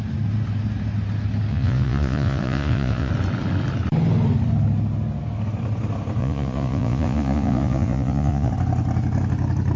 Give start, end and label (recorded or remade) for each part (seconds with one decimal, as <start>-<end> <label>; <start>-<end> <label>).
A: 0.0-1.5 recorded; 1.5-3.1 remade; 3.1-6.2 recorded; 6.2-8.5 remade; 8.5-9.8 recorded